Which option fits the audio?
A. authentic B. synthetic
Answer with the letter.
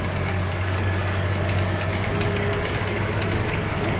B